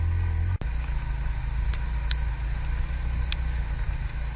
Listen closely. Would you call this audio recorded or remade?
recorded